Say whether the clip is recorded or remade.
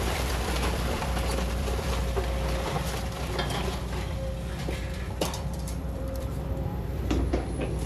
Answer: remade